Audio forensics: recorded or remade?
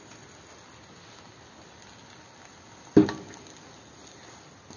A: recorded